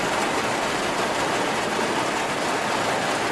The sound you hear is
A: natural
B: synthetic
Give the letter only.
A